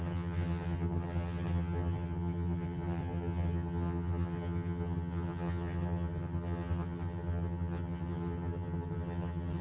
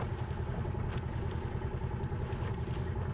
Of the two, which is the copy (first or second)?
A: first